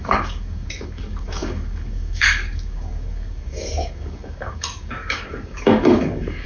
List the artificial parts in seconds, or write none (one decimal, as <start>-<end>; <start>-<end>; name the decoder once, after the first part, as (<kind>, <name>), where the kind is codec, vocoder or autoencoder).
0.0-6.5 (codec, DAC)